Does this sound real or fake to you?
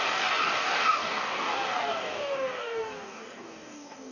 fake